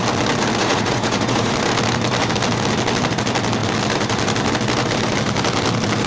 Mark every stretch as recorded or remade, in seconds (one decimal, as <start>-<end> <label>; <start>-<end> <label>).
0.0-0.6 recorded; 0.6-1.5 remade; 1.5-6.1 recorded